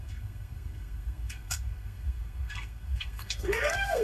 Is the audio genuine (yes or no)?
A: no